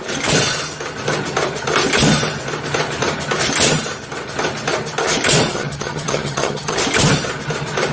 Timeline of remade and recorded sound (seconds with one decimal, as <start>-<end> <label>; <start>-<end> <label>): 0.0-5.5 recorded; 5.5-6.8 remade; 6.8-7.9 recorded

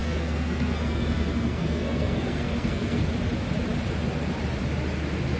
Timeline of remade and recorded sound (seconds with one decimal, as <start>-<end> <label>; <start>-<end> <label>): 0.0-3.0 remade; 3.0-5.4 recorded

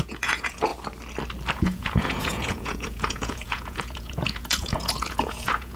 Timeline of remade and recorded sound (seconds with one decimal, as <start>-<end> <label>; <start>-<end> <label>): 0.0-0.7 remade; 0.7-1.5 recorded; 1.5-5.8 remade

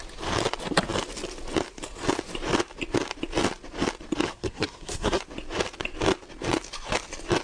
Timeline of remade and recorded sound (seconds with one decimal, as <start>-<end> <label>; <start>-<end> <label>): 0.0-4.3 recorded; 4.3-5.2 remade; 5.2-7.4 recorded